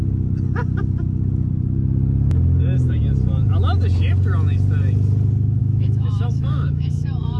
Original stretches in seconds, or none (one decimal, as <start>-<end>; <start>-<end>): 0.0-5.6